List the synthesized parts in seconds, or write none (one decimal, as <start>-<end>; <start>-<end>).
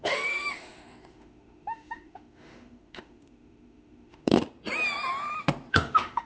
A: 0.0-4.4; 5.7-6.3